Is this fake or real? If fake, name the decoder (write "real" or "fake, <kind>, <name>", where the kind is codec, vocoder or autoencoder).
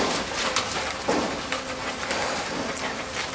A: real